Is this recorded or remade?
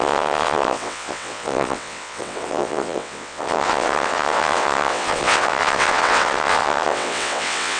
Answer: remade